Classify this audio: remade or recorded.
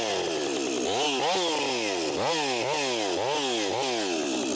recorded